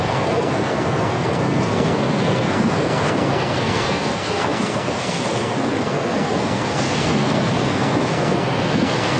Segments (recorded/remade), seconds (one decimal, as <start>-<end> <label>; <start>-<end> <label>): 0.0-9.2 remade